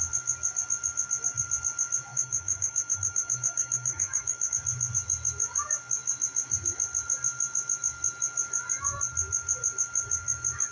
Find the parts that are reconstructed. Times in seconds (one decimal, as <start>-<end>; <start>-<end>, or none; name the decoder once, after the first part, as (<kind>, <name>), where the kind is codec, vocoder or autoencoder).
2.1-4.5 (autoencoder, DAC-VAE)